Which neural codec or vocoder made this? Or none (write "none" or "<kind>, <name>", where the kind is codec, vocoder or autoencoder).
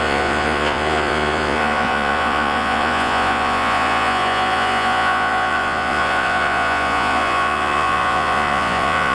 vocoder, Vocos